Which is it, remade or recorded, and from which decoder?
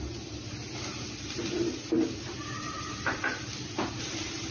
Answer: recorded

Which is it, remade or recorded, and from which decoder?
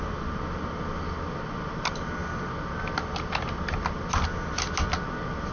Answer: recorded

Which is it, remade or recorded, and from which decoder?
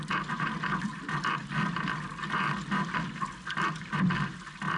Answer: recorded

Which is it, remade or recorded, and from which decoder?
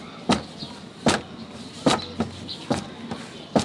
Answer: recorded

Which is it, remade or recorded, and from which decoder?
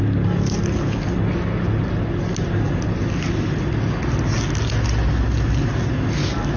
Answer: recorded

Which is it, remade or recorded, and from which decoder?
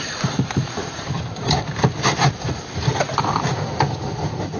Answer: remade, vocoder, BigVGAN v2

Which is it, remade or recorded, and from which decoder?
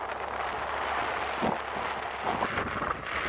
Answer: recorded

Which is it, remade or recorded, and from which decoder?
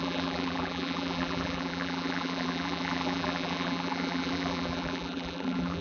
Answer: remade, vocoder, BigVGAN v2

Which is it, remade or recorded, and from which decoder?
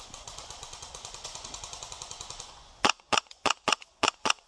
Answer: remade, vocoder, Vocos